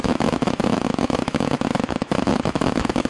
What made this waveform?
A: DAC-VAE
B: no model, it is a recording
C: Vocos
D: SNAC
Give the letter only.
A